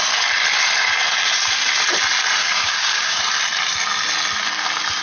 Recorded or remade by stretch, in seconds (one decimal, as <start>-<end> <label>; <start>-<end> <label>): 0.0-2.4 recorded; 2.4-3.2 remade; 3.2-5.0 recorded